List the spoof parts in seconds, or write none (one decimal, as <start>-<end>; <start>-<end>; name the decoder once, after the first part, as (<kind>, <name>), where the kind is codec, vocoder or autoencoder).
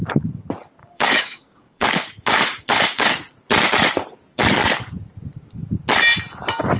0.8-3.1 (codec, DAC)